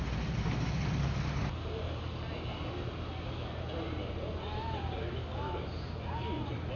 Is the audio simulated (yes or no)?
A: no